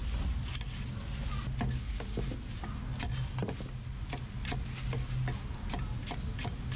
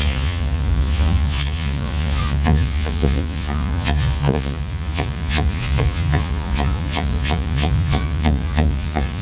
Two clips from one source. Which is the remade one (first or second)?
second